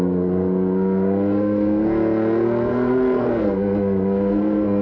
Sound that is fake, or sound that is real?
fake